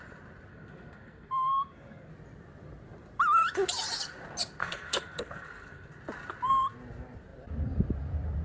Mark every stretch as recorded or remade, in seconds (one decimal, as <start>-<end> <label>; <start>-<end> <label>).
0.0-0.5 recorded; 0.5-2.1 remade; 2.1-4.6 recorded; 4.6-5.9 remade; 5.9-8.4 recorded